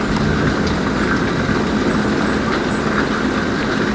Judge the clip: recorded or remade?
recorded